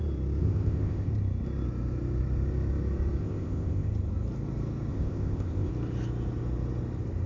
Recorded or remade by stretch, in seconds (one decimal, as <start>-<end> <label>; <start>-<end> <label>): 0.0-0.4 recorded; 0.4-1.1 remade; 1.1-3.2 recorded; 3.2-3.9 remade; 3.9-4.9 recorded; 4.9-5.7 remade; 5.7-7.3 recorded